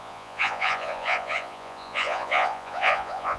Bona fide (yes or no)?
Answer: no